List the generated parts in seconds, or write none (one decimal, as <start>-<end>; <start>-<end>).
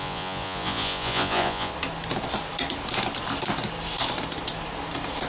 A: 0.0-1.7